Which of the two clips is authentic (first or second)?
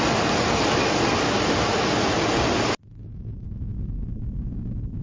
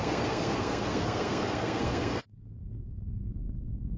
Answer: first